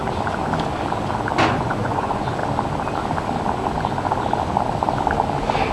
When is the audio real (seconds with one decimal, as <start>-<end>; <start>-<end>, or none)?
0.0-1.5; 2.4-5.7